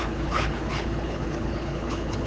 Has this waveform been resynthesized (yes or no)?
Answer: yes